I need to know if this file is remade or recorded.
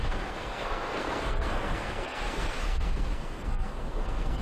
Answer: remade